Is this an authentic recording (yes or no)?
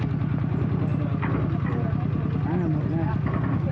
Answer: yes